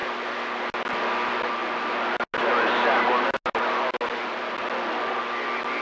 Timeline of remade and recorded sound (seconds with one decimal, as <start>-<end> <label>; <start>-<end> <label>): 0.0-5.8 recorded

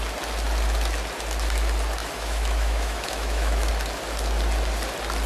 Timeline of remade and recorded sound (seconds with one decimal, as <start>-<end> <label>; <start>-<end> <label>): 0.0-2.0 recorded; 2.0-3.7 remade; 3.7-5.3 recorded

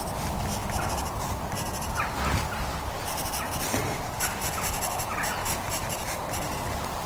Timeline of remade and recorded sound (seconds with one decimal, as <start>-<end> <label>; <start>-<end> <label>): 0.0-7.1 recorded

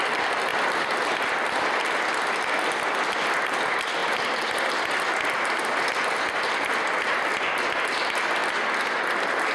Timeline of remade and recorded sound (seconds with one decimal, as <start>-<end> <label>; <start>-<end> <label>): 0.0-9.5 recorded

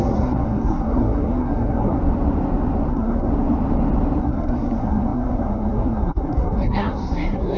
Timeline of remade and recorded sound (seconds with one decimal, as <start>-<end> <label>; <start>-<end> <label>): 0.0-2.0 remade; 2.0-2.9 recorded; 2.9-3.3 remade; 3.3-4.2 recorded; 4.2-7.6 remade

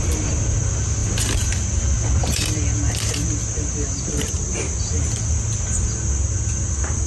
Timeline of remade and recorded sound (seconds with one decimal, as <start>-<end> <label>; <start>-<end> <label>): 0.0-7.1 recorded

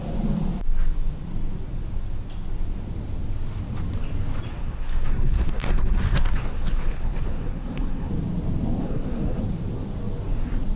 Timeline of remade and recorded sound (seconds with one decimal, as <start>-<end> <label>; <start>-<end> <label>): 0.0-4.5 recorded; 4.5-8.1 remade; 8.1-8.8 recorded; 8.8-9.4 remade; 9.4-10.8 recorded